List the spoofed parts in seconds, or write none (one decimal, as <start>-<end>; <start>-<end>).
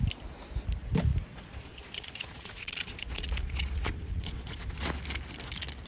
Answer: 1.3-4.8